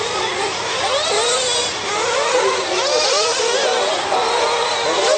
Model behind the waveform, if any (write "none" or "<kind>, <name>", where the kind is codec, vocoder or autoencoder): none